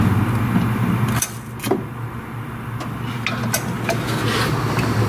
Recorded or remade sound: recorded